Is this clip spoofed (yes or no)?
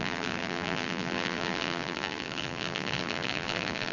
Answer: yes